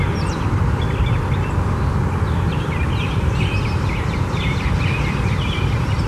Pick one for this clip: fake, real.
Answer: fake